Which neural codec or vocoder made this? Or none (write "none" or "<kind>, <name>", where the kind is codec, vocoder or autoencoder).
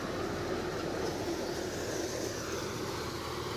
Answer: none